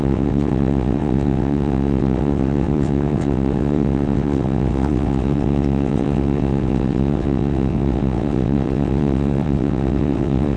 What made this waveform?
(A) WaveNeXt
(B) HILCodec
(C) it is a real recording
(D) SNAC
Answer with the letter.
A